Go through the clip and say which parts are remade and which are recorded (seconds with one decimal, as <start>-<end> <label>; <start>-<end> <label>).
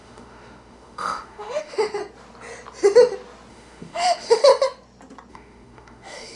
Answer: 0.0-2.0 remade; 2.0-3.5 recorded; 3.5-4.5 remade; 4.5-5.3 recorded; 5.3-6.4 remade